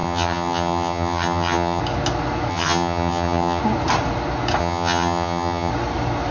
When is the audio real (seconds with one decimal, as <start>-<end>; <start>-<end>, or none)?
1.8-2.5; 3.6-4.6; 5.7-6.3